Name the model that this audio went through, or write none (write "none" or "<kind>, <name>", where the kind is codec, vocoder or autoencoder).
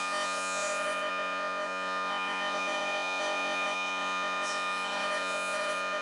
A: vocoder, Vocos